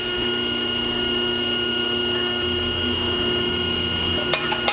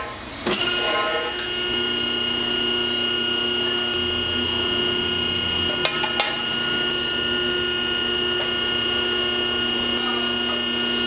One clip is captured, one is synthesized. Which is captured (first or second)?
second